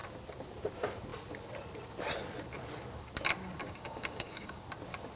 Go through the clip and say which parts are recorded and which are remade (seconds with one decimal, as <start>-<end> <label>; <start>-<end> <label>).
0.0-3.6 recorded; 3.6-4.6 remade; 4.6-5.2 recorded